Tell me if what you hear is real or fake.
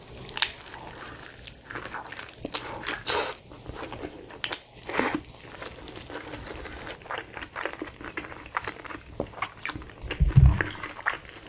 real